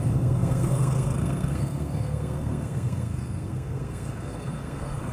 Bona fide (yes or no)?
no